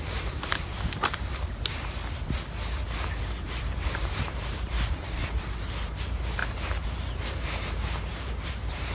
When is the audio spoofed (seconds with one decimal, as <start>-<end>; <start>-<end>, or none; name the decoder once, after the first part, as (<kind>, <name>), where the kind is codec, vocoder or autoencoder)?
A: 0.0-2.0 (vocoder, BigVGAN v2); 3.4-5.2; 5.8-8.9